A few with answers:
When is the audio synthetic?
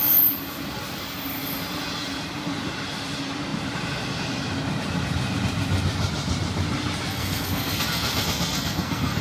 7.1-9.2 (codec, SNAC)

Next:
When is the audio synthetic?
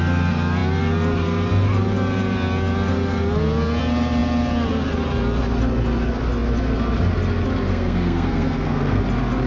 7.7-9.0 (codec, SNAC)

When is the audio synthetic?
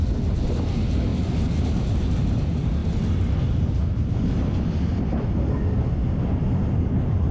none